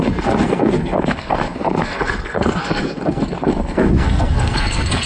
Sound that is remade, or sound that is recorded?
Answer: remade